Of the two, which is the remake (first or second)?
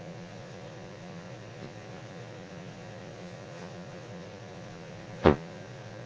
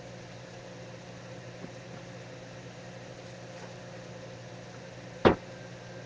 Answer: first